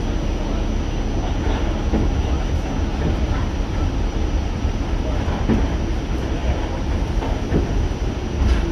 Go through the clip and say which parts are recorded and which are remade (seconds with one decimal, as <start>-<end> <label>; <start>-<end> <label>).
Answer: 0.0-2.9 recorded; 2.9-5.6 remade; 5.6-6.4 recorded; 6.4-8.7 remade